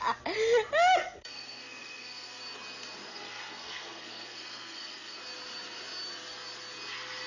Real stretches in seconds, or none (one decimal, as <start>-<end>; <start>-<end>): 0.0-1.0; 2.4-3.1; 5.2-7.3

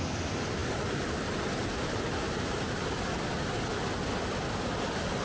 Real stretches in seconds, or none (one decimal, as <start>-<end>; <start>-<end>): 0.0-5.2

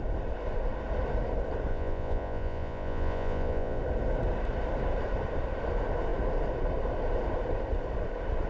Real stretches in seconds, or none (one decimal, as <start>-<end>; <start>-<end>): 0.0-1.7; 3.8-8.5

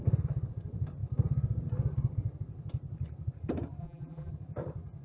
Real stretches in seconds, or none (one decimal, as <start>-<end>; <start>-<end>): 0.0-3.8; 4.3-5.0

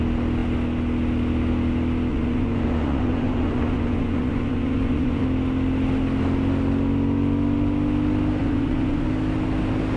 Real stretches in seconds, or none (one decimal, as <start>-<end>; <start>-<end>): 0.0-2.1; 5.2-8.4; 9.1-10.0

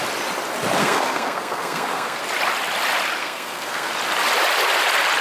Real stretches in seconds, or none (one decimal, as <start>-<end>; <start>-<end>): 0.0-0.8; 2.2-3.2; 3.9-5.2

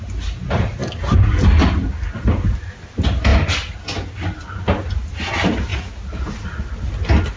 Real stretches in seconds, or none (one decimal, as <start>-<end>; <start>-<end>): 0.0-7.4

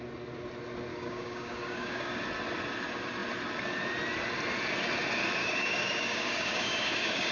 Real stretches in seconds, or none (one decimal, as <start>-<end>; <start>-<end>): 0.0-0.9; 2.2-5.4